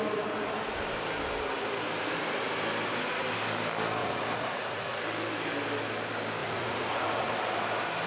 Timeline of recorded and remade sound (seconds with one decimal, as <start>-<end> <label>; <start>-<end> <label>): 0.0-4.0 recorded; 4.0-5.0 remade; 5.0-6.4 recorded; 6.4-7.3 remade; 7.3-8.1 recorded

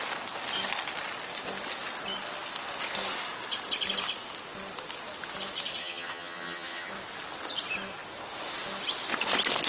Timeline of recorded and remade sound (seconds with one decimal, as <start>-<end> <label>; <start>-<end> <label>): 0.0-5.8 recorded; 5.8-6.9 remade; 6.9-9.7 recorded

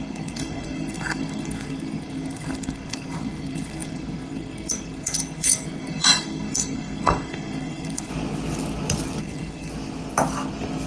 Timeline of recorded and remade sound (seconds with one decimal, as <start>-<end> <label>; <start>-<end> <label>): 0.0-8.1 remade; 8.1-9.2 recorded; 9.2-9.7 remade; 9.7-10.9 recorded

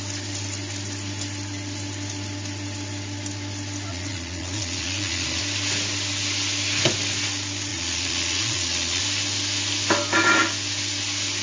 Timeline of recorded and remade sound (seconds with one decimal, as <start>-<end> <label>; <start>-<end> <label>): 0.0-3.9 recorded; 3.9-5.4 remade; 5.4-7.7 recorded; 7.7-9.0 remade; 9.0-11.4 recorded

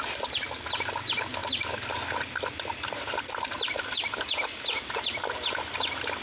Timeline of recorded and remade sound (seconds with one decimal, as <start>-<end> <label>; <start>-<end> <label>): 0.0-6.2 recorded